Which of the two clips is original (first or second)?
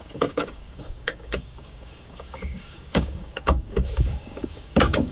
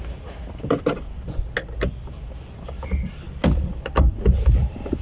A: second